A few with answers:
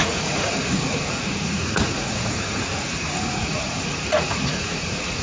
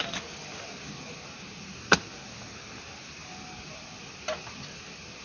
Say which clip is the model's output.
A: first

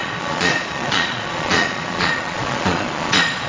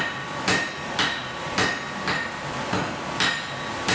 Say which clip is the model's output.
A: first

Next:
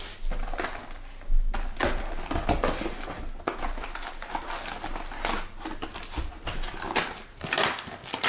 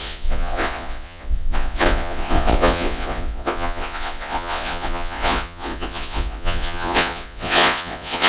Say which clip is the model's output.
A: second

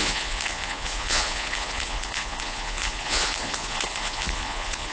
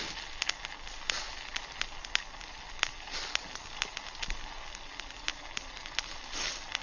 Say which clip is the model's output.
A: first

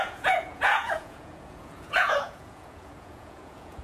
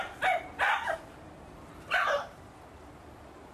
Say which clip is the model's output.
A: first